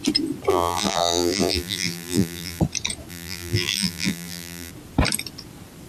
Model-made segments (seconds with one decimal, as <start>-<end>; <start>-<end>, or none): 0.5-2.6; 3.1-4.7

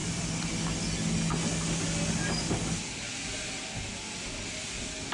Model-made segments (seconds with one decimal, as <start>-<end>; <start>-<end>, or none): 0.0-0.5

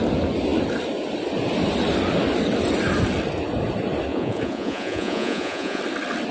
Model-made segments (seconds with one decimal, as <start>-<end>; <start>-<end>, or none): 4.1-5.8

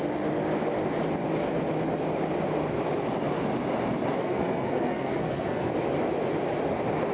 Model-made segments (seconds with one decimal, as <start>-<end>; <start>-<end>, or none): 4.2-5.7

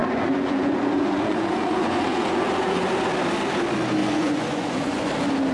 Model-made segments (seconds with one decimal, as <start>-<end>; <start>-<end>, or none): 0.0-2.8; 4.0-5.1

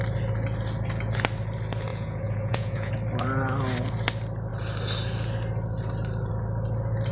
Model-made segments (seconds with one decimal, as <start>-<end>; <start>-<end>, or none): 1.9-2.9

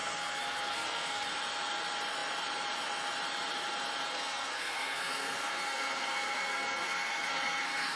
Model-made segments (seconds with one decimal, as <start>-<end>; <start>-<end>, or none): 0.0-1.3; 4.1-8.0